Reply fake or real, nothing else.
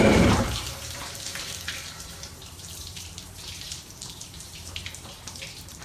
fake